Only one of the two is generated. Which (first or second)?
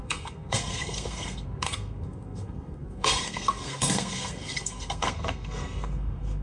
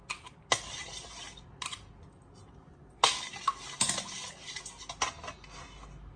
first